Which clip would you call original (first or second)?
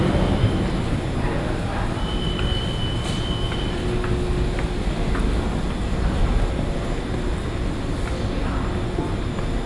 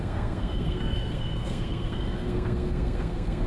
first